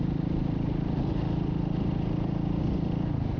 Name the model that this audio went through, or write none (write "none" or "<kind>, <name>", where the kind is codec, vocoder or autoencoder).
none